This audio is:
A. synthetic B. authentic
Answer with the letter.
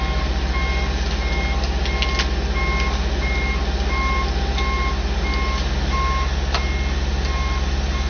B